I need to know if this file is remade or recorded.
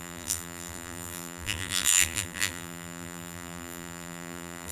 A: remade